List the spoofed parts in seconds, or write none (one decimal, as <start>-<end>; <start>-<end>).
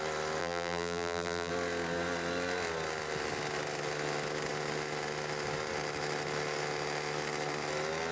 0.4-1.5